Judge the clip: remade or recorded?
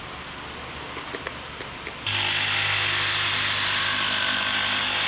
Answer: recorded